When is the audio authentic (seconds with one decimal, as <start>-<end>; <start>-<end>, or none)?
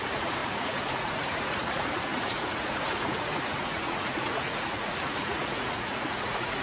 none